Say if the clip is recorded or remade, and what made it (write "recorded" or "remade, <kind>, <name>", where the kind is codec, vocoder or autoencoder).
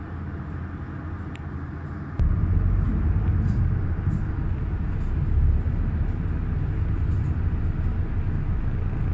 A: recorded